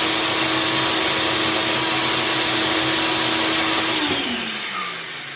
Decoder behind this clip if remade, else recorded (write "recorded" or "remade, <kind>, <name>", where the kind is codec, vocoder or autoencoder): recorded